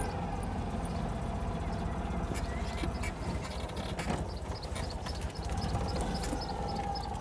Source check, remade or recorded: recorded